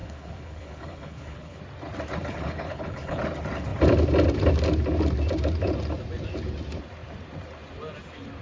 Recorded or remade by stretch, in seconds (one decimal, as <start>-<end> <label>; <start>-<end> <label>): 0.0-1.6 remade; 1.6-2.2 recorded; 2.2-3.2 remade; 3.2-8.4 recorded